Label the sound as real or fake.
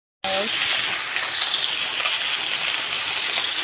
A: real